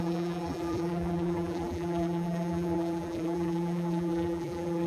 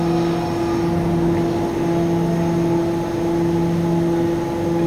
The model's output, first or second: first